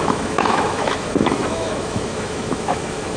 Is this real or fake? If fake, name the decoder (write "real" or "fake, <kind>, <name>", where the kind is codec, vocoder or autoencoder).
fake, autoencoder, DAC-VAE